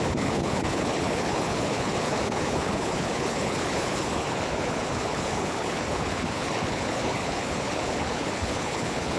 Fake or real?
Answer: fake